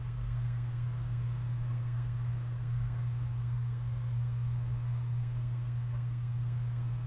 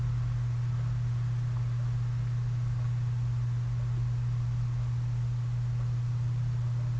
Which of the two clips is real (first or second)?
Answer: second